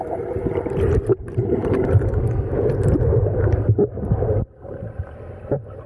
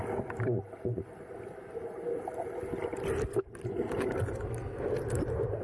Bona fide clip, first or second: second